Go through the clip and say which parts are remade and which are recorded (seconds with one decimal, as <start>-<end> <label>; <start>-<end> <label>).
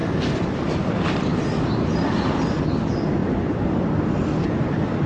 0.0-1.4 remade; 1.4-3.2 recorded; 3.2-3.8 remade; 3.8-5.1 recorded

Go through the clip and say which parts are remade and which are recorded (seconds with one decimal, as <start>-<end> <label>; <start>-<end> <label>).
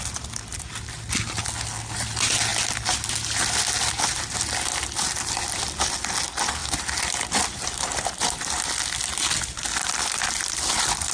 0.0-11.1 recorded